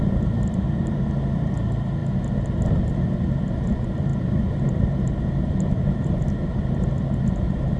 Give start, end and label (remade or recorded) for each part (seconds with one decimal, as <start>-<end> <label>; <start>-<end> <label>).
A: 0.0-2.0 remade; 2.0-3.4 recorded; 3.4-7.8 remade